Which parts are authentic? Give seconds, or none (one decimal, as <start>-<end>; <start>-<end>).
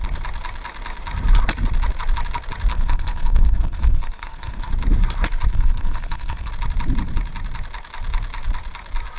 0.0-2.7; 4.7-5.5; 6.5-9.2